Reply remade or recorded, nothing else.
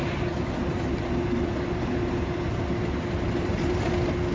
recorded